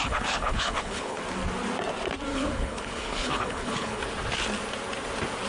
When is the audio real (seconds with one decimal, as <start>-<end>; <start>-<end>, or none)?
1.2-2.3; 4.0-5.5